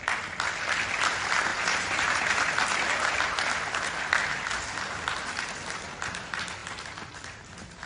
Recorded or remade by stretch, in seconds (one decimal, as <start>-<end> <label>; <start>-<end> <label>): 0.0-1.5 recorded; 1.5-2.3 remade; 2.3-7.9 recorded